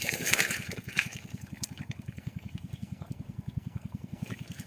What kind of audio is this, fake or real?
fake